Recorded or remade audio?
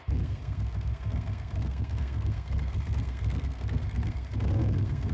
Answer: remade